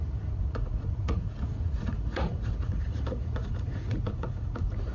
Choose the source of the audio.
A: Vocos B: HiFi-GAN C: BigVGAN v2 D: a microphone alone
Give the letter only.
A